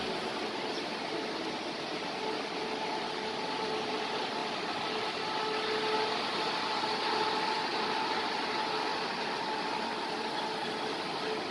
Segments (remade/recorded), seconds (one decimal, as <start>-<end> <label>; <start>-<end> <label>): 0.0-4.4 recorded; 4.4-5.1 remade; 5.1-7.7 recorded; 7.7-8.5 remade; 8.5-11.5 recorded